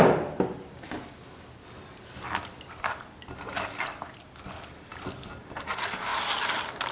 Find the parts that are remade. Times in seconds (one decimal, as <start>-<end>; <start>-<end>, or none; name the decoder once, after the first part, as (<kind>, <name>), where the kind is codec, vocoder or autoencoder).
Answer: none